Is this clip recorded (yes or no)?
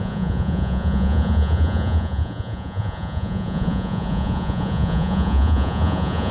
no